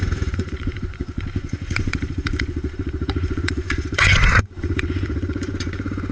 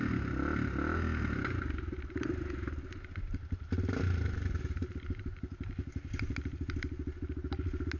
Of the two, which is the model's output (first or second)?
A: first